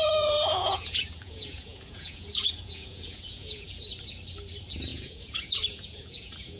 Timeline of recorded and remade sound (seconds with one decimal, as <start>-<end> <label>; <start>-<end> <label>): 0.0-3.9 remade; 3.9-4.9 recorded; 4.9-6.6 remade